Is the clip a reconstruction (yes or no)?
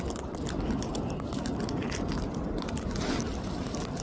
no